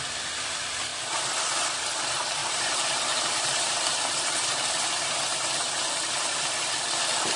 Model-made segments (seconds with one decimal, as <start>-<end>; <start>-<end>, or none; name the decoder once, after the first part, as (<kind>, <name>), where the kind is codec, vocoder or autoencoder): 2.4-6.8 (vocoder, BigVGAN v2)